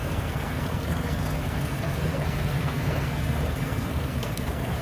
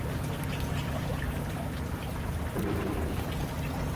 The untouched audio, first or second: second